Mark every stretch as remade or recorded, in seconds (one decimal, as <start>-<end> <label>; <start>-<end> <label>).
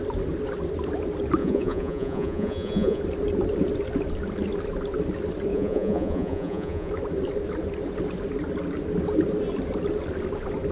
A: 0.0-1.4 recorded; 1.4-3.0 remade; 3.0-5.5 recorded; 5.5-6.9 remade; 6.9-10.7 recorded